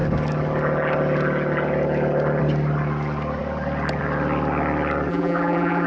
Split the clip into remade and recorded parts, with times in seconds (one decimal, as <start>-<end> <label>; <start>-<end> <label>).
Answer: 0.0-5.1 recorded; 5.1-5.9 remade